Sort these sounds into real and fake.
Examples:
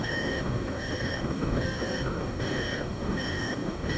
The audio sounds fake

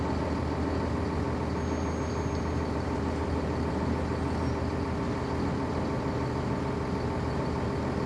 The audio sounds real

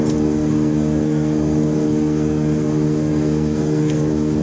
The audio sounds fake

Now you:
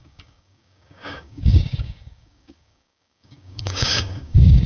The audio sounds fake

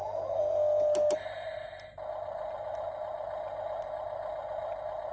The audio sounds real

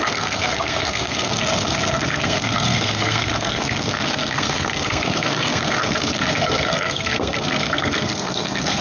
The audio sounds fake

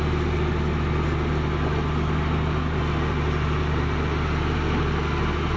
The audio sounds real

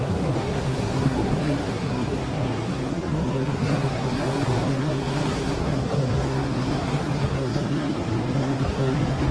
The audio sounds fake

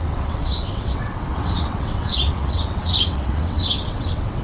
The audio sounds fake